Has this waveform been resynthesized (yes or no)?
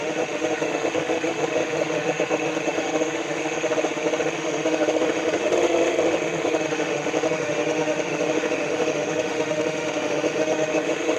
yes